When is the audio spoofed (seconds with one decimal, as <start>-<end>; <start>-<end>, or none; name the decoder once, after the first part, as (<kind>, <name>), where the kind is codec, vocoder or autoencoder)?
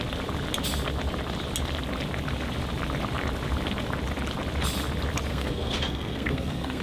5.3-6.8 (codec, SNAC)